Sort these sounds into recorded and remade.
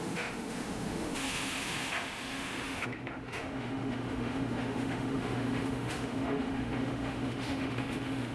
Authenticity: remade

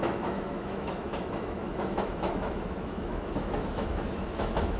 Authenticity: remade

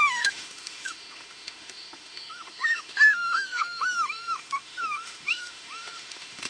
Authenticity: remade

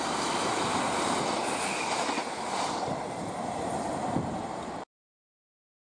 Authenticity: recorded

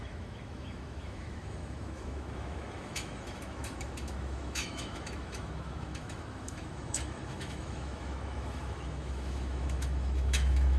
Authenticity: remade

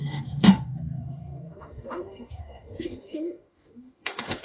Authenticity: remade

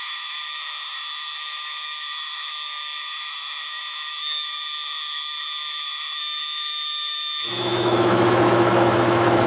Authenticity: remade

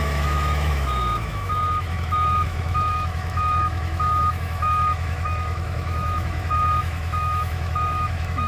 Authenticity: remade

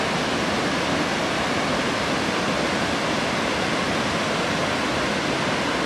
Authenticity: recorded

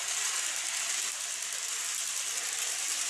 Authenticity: recorded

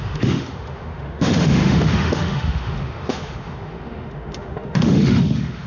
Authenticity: remade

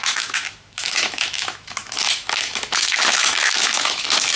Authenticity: remade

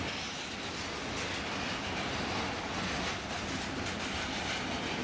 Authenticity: recorded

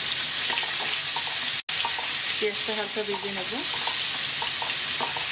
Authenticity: recorded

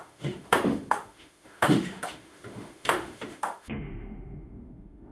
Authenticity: remade